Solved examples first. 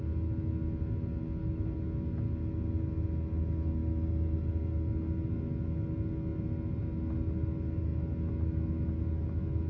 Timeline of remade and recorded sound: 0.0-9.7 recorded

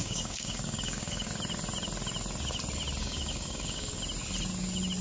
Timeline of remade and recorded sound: 0.0-1.3 remade; 1.3-3.0 recorded; 3.0-4.0 remade; 4.0-5.0 recorded

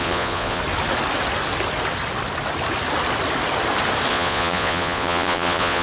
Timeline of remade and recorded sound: 0.0-0.6 remade; 0.6-4.1 recorded; 4.1-5.8 remade

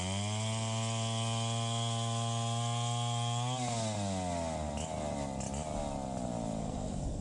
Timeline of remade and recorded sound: 0.0-6.6 recorded; 6.6-7.2 remade